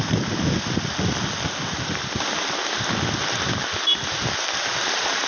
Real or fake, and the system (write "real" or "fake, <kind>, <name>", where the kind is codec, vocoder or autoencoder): real